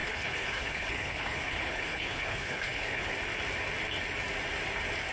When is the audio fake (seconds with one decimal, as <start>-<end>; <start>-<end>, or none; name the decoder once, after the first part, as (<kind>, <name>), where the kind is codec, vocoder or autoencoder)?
0.0-3.1 (codec, HILCodec)